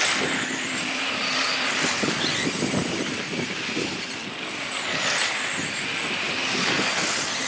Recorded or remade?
recorded